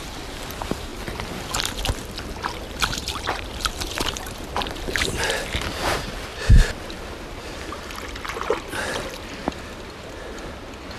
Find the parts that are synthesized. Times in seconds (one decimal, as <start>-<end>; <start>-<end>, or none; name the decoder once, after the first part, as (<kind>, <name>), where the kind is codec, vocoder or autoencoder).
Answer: 0.0-0.9 (vocoder, BigVGAN v2); 2.7-6.3